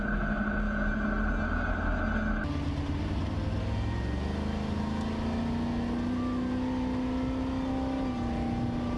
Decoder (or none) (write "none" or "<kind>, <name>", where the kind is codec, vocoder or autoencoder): none